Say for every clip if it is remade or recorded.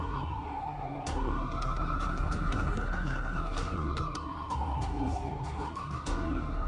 remade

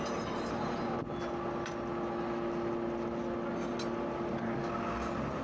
recorded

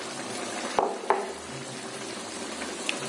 recorded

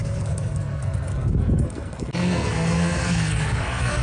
remade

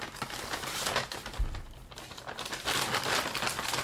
recorded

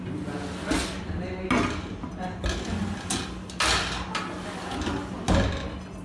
recorded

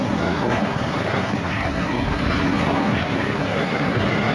remade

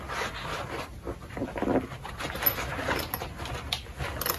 recorded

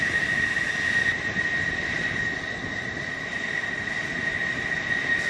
recorded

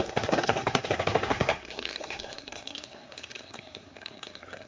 remade